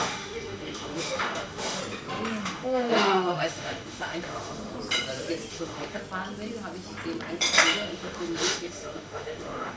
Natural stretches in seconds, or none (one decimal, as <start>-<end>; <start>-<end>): 1.8-2.4; 4.7-5.5; 6.0-7.7